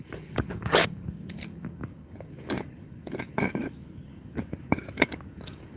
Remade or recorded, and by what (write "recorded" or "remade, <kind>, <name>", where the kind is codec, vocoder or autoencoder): remade, codec, DAC